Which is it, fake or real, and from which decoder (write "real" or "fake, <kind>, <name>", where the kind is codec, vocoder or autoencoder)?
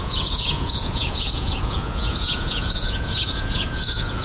fake, vocoder, Vocos